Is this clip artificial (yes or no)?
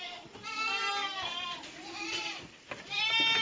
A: yes